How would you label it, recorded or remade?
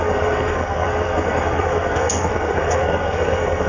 remade